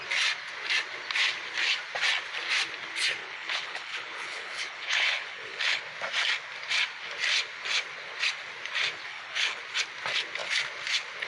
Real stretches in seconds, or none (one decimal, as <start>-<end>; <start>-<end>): 0.0-3.2; 5.8-9.1; 9.6-11.3